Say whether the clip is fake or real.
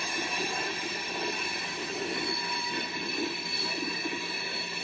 real